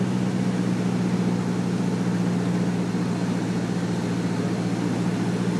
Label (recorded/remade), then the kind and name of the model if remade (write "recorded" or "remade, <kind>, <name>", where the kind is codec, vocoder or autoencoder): recorded